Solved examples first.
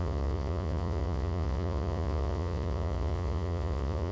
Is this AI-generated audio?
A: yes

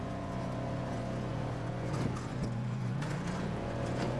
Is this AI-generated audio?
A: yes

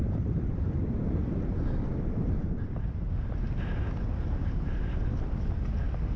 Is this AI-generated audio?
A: no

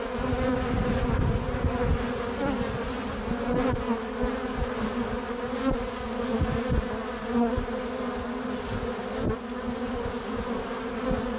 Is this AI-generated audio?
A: no